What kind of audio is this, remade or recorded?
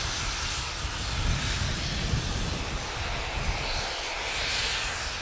recorded